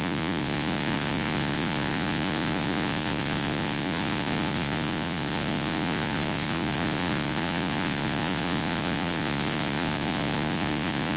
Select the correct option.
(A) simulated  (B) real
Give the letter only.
A